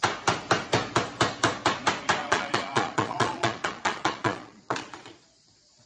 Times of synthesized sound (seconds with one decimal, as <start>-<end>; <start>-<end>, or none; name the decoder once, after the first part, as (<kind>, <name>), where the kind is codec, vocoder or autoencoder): 2.2-5.9 (vocoder, Vocos)